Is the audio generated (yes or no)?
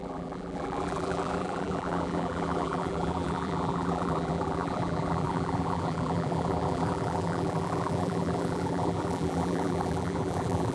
yes